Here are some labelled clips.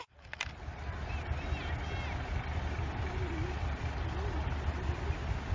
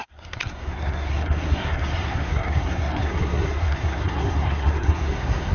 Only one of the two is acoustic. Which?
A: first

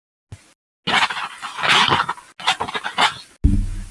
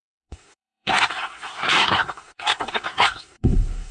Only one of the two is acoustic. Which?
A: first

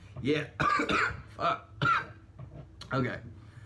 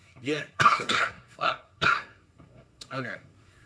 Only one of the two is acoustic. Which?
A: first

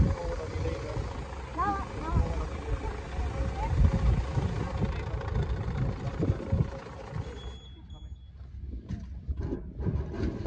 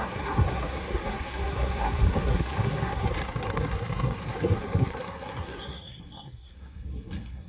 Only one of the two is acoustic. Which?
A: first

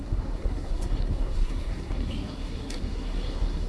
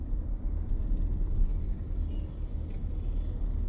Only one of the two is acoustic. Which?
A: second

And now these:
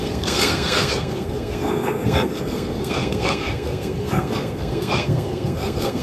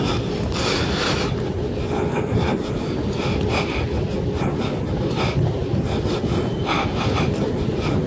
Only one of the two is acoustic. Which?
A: second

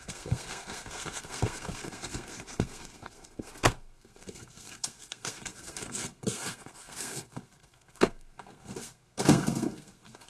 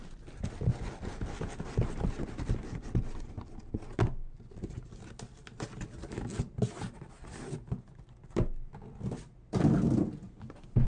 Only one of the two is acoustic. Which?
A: second